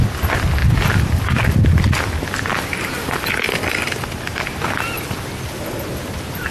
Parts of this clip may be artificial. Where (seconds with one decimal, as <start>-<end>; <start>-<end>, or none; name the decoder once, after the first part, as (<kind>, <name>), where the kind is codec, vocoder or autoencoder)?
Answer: none